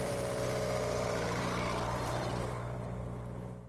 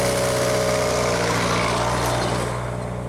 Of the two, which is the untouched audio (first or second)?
second